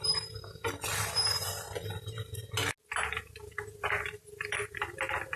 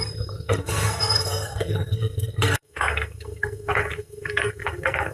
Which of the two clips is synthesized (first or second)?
second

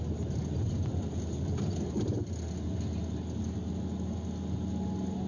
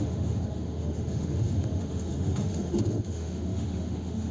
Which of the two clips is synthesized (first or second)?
second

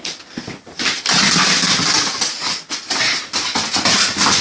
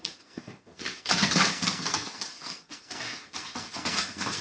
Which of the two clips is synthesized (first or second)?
second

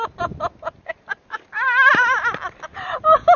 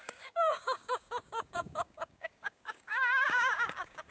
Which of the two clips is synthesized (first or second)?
second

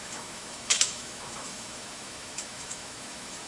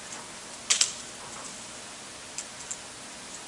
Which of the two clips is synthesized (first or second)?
first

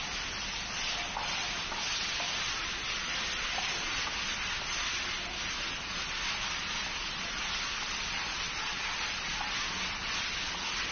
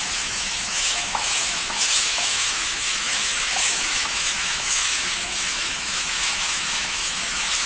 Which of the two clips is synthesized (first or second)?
second